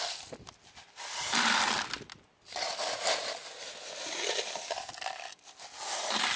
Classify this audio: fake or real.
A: real